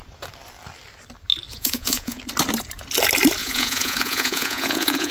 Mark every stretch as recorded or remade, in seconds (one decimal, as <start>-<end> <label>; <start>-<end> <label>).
0.0-1.5 recorded; 1.5-2.2 remade; 2.2-3.4 recorded; 3.4-5.1 remade